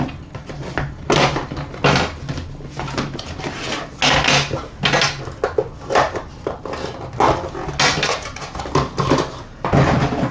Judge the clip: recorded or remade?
recorded